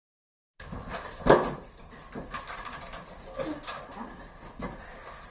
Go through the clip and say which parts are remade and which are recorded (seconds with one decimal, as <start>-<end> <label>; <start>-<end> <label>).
0.0-5.3 recorded